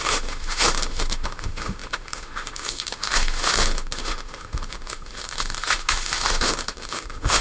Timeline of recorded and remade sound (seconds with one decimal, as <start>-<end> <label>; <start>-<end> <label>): 0.0-7.4 remade